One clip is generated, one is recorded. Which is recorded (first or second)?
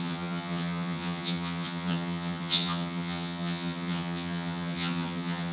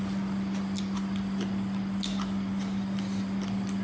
second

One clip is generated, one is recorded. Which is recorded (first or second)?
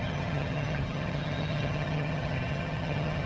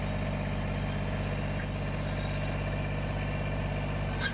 second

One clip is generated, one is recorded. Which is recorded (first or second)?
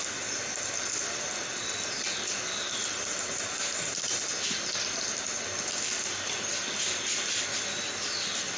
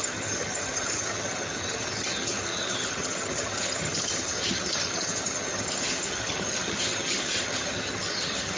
first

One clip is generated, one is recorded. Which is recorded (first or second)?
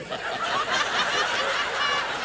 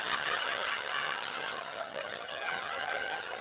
first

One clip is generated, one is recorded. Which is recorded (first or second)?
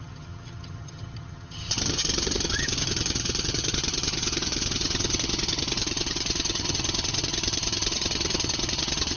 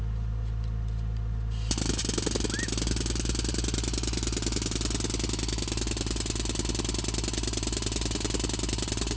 second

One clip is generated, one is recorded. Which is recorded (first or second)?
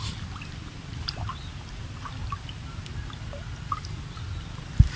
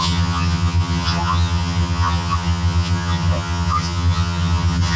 first